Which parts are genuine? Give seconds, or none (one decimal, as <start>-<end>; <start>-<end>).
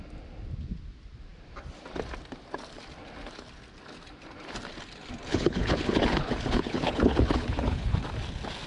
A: 0.0-5.3; 8.0-8.7